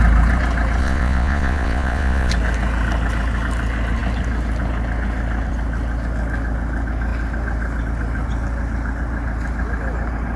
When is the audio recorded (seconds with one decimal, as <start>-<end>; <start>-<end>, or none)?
0.0-0.8; 2.3-10.4